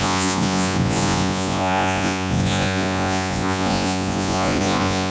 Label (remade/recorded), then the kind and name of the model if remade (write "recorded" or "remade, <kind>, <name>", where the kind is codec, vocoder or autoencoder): remade, vocoder, Vocos